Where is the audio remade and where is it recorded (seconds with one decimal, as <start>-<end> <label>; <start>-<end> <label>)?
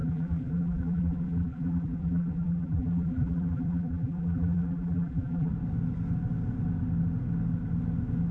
0.0-5.5 remade; 5.5-8.3 recorded